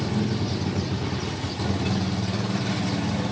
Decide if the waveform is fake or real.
real